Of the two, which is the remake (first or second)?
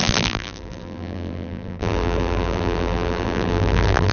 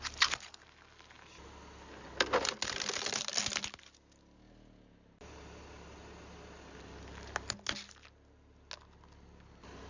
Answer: first